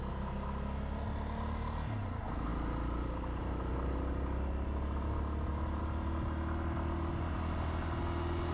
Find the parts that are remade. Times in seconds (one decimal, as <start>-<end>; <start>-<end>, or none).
none